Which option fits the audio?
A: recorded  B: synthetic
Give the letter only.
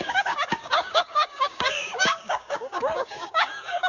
B